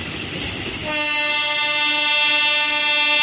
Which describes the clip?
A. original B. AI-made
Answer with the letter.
A